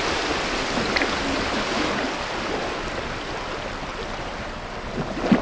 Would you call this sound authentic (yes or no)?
yes